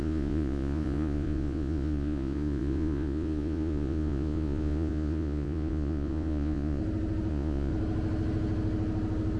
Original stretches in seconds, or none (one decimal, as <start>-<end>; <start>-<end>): 6.8-7.3; 7.7-9.4